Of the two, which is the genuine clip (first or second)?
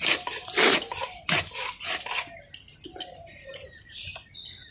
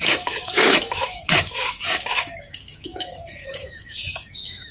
first